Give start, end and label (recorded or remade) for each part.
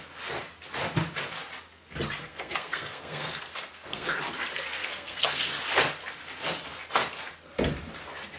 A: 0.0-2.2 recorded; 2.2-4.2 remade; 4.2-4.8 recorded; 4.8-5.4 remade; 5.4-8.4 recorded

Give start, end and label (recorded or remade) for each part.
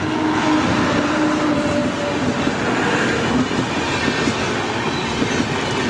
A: 0.0-5.9 recorded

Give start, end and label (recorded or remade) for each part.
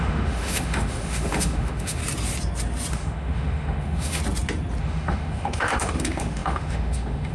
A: 0.0-2.0 remade; 2.0-2.9 recorded; 2.9-4.2 remade; 4.2-4.8 recorded; 4.8-7.3 remade